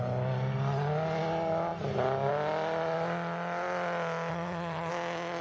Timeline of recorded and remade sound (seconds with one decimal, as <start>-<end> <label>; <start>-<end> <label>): 0.0-4.3 recorded; 4.3-4.9 remade; 4.9-5.4 recorded